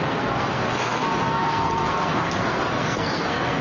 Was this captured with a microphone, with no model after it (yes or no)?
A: no